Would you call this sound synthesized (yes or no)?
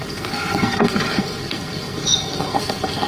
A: yes